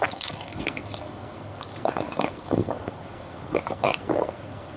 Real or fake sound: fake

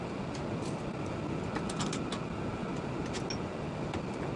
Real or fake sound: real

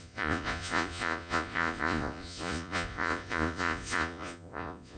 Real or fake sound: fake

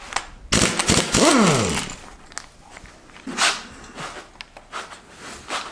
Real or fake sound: real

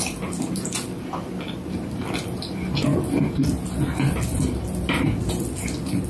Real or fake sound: fake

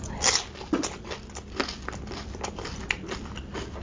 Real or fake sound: real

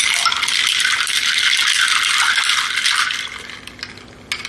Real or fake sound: real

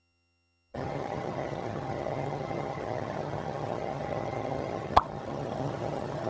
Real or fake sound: fake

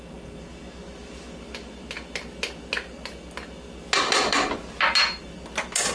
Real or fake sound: real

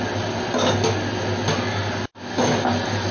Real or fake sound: real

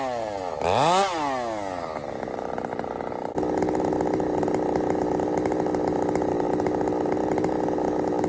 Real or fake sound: real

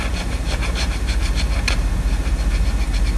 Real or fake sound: fake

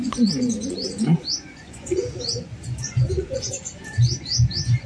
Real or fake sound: fake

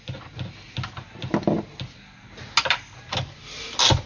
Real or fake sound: real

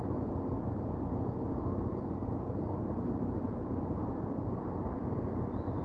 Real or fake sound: real